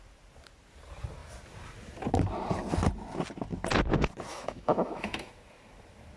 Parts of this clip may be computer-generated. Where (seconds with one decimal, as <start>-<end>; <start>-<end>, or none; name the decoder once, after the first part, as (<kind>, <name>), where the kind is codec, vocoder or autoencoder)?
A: 4.3-5.3 (autoencoder, DAC-VAE)